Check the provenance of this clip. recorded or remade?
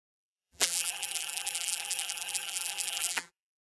remade